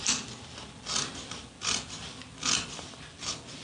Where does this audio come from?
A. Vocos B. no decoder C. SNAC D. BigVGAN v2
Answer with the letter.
D